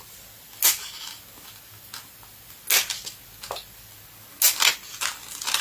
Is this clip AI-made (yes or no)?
no